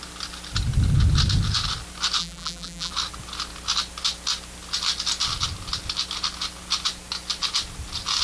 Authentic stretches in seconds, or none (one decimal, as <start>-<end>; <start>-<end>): 0.0-2.2; 2.9-8.2